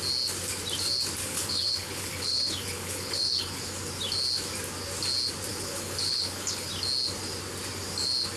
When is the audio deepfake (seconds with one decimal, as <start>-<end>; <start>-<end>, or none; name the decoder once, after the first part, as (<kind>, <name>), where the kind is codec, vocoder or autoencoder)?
1.2-3.6 (codec, HILCodec); 5.5-6.7